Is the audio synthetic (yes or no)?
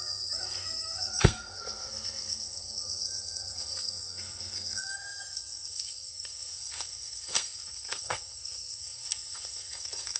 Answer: yes